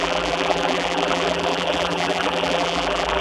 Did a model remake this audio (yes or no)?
yes